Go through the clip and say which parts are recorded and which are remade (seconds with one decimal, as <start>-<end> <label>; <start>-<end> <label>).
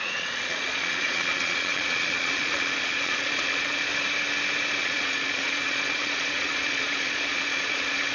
0.0-3.9 remade; 3.9-4.8 recorded; 4.8-8.1 remade